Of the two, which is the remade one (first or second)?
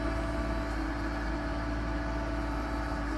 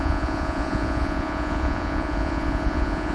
second